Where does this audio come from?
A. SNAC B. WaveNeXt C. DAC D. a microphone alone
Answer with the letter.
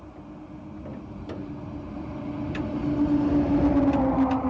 D